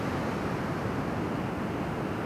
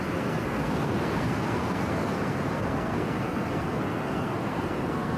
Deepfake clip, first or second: second